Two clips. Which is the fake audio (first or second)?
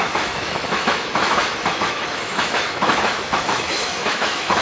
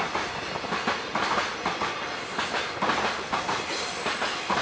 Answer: first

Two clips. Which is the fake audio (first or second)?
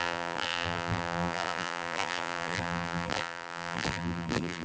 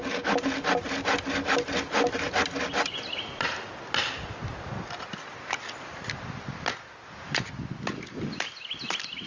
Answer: first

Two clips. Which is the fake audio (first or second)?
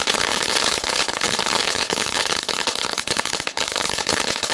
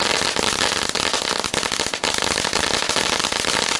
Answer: first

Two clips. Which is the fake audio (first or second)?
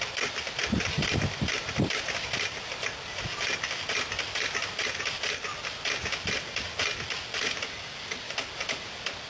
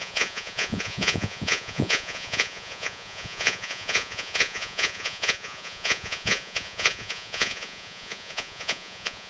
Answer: second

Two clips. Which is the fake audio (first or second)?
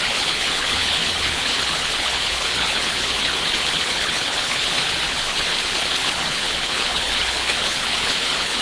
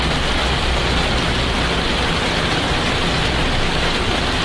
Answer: first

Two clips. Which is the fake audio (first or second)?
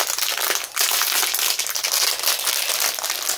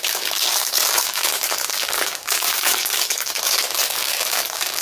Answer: second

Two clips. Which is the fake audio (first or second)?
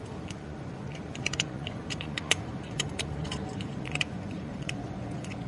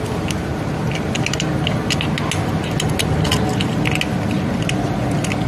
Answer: first